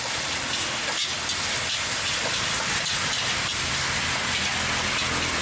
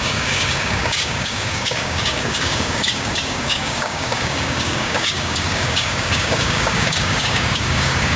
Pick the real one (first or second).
first